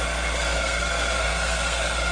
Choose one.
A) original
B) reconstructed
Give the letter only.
B